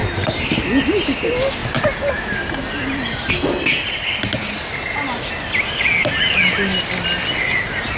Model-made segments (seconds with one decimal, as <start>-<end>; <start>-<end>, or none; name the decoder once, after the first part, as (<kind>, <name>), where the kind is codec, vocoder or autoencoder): 0.0-0.5 (vocoder, BigVGAN v2); 1.6-3.3